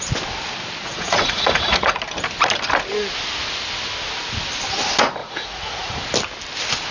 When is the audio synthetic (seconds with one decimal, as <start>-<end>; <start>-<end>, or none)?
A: 0.8-2.0; 5.2-6.0